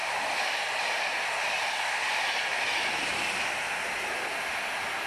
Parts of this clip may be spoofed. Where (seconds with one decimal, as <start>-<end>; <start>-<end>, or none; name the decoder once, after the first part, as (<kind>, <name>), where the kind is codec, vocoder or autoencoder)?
none